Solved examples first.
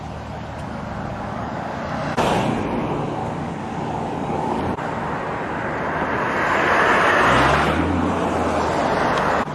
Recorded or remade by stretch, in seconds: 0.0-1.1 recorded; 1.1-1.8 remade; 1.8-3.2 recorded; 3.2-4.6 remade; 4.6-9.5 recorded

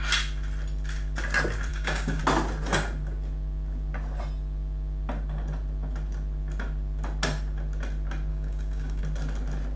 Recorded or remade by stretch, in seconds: 0.0-1.7 recorded; 1.7-2.2 remade; 2.2-8.3 recorded; 8.3-9.0 remade; 9.0-9.8 recorded

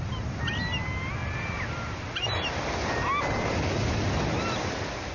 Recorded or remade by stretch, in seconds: 0.0-5.1 recorded

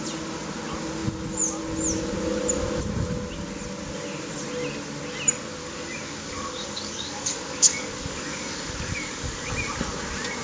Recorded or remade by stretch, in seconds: 0.0-5.6 recorded; 5.6-9.5 remade; 9.5-10.4 recorded

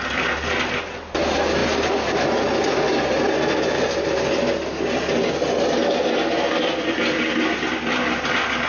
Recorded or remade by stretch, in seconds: 0.0-8.7 recorded